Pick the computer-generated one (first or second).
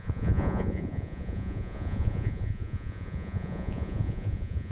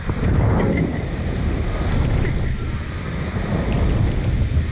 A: first